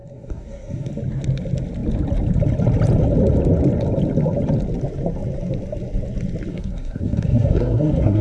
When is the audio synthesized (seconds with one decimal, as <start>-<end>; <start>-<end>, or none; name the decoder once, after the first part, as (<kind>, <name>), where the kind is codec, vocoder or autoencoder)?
0.0-0.9 (codec, SNAC); 6.5-8.2